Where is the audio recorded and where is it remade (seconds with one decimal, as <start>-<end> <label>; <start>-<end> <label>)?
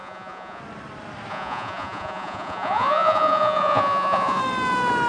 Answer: 0.0-0.6 remade; 0.6-1.3 recorded; 1.3-4.4 remade; 4.4-5.1 recorded